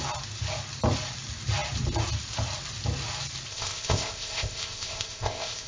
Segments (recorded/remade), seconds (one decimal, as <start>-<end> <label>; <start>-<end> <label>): 0.0-3.5 recorded; 3.5-5.7 remade